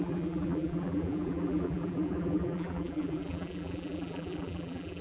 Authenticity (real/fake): fake